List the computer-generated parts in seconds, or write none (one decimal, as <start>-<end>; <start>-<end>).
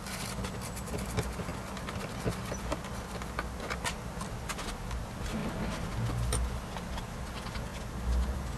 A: none